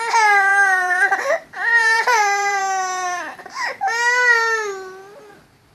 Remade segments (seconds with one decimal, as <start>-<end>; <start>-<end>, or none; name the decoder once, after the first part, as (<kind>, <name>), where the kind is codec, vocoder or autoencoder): 0.5-2.6 (vocoder, BigVGAN v2)